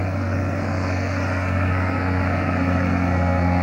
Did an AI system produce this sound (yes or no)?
yes